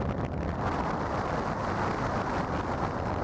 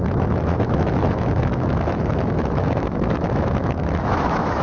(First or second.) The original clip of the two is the first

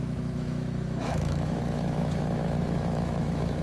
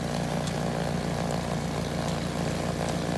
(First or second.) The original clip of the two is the second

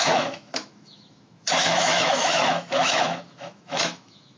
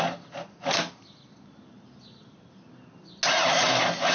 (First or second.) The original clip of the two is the second